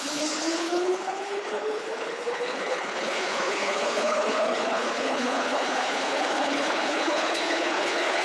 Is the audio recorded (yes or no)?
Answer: no